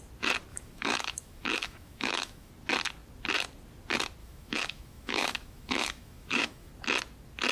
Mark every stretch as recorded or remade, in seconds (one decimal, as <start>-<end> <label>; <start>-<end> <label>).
0.0-0.5 recorded; 0.5-2.5 remade; 2.5-4.2 recorded; 4.2-6.7 remade; 6.7-7.5 recorded

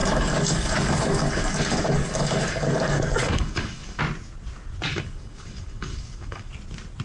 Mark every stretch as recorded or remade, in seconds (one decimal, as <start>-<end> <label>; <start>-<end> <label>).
0.0-4.0 remade; 4.0-4.9 recorded; 4.9-6.5 remade; 6.5-7.0 recorded

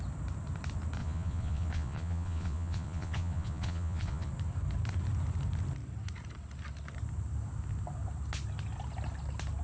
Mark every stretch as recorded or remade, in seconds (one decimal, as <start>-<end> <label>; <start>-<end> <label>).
0.0-1.0 recorded; 1.0-4.3 remade; 4.3-9.6 recorded

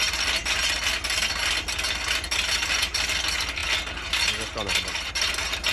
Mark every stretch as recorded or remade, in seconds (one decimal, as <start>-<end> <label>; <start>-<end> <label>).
0.0-5.7 recorded

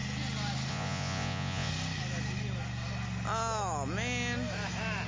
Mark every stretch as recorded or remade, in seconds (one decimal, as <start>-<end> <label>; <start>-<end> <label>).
0.0-0.7 recorded; 0.7-1.7 remade; 1.7-5.1 recorded